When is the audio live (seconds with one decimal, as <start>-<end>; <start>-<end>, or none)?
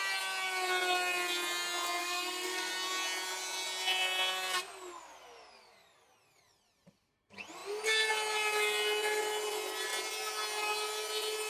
0.0-2.0; 2.7-11.5